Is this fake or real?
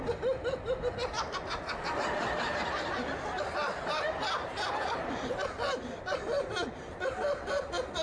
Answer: real